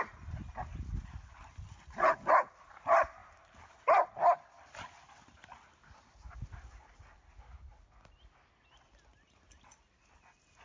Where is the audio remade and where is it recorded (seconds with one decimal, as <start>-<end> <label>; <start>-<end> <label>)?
0.0-10.6 recorded